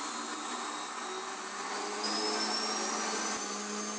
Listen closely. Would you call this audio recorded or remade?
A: recorded